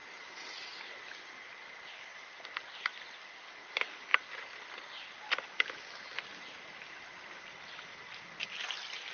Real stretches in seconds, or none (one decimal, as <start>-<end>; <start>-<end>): 0.0-9.1